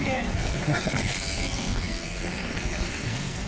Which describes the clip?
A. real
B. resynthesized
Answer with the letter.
B